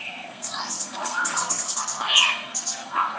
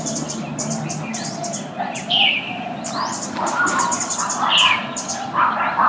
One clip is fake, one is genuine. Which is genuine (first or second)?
second